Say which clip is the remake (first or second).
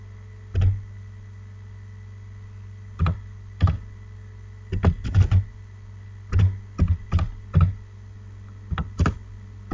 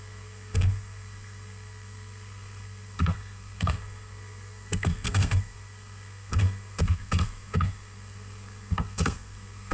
second